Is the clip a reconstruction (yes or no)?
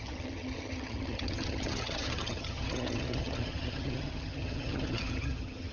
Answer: yes